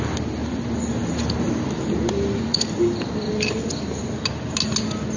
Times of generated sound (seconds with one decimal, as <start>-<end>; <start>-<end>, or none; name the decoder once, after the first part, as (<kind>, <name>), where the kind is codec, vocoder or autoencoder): 2.5-4.0 (vocoder, BigVGAN v2)